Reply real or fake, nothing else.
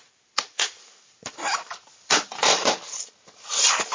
fake